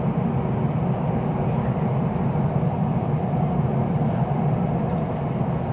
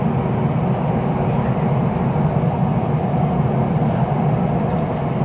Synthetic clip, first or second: first